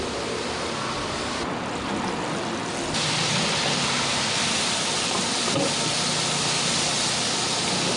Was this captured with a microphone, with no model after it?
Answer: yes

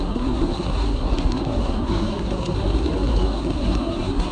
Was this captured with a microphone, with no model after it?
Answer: no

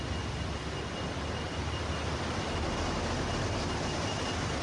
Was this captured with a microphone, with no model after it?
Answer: yes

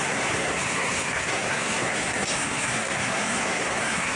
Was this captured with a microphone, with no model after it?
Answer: no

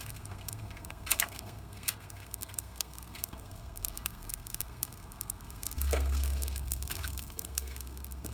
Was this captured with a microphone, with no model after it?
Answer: no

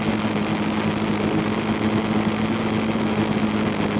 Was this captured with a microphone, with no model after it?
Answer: yes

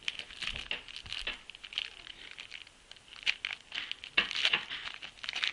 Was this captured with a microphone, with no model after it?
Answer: yes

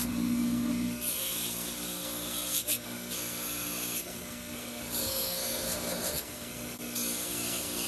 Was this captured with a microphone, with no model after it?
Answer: no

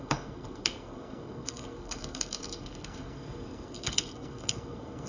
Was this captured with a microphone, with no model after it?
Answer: no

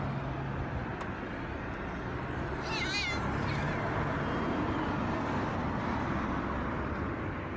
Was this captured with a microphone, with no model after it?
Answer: yes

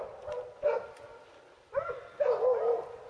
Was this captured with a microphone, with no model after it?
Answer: yes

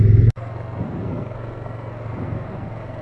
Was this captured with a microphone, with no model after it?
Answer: no